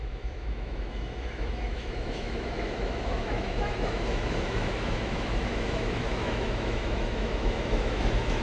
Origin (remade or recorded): remade